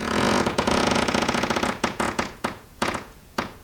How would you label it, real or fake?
fake